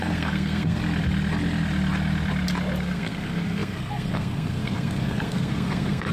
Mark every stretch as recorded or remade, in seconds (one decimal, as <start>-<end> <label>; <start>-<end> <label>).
0.0-0.8 remade; 0.8-2.8 recorded; 2.8-6.1 remade